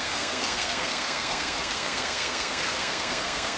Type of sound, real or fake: fake